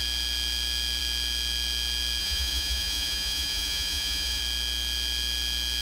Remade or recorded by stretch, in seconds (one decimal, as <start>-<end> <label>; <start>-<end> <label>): 0.0-2.2 recorded; 2.2-4.4 remade; 4.4-5.8 recorded